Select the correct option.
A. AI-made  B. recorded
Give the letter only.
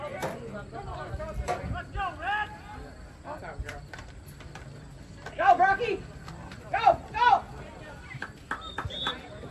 B